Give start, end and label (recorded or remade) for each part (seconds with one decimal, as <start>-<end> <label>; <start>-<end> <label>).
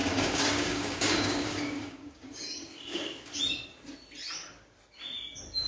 0.0-3.4 remade; 3.4-5.7 recorded